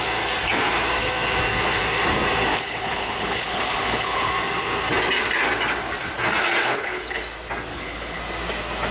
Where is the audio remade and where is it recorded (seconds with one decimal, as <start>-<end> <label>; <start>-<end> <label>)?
0.0-2.5 recorded; 2.5-4.3 remade; 4.3-6.6 recorded; 6.6-7.2 remade; 7.2-7.7 recorded; 7.7-8.2 remade; 8.2-8.9 recorded